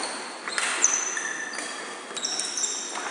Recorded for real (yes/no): yes